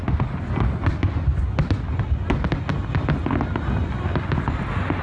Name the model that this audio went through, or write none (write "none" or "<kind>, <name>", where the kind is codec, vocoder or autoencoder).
none